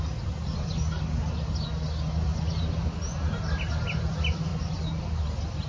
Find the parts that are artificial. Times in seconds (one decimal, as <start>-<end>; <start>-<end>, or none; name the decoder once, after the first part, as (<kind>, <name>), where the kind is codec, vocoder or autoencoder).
none